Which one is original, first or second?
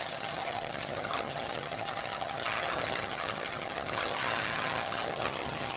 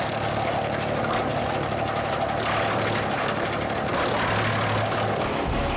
second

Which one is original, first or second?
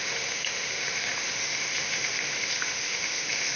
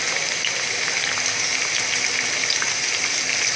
second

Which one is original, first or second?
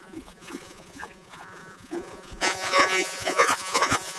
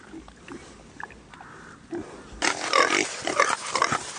second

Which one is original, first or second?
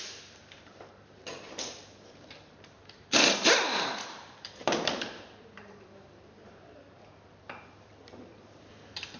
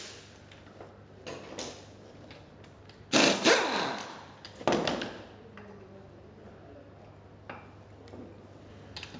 second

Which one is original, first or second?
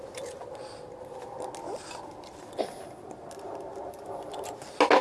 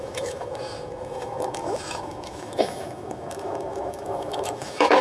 first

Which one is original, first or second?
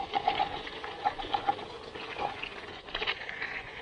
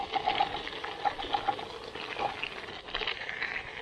second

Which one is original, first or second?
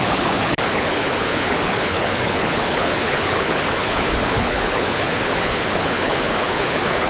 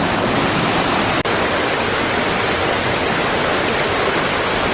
second